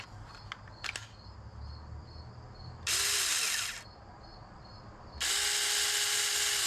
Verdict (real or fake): real